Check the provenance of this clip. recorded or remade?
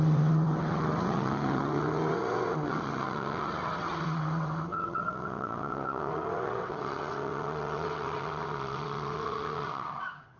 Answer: remade